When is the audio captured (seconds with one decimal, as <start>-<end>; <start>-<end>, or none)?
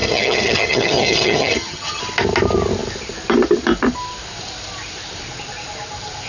2.0-6.3